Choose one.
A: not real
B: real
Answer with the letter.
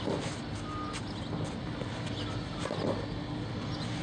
B